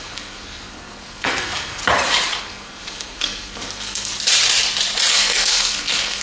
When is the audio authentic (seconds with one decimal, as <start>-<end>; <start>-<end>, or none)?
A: 1.8-2.4; 4.1-5.1